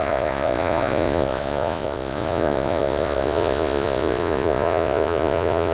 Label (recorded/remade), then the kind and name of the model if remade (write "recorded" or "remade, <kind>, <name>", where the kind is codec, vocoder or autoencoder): remade, vocoder, Vocos